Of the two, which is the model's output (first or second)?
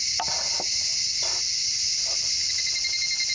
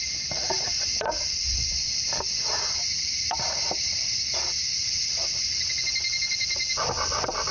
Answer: second